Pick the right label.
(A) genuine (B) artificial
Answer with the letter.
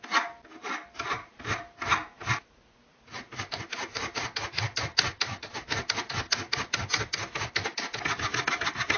A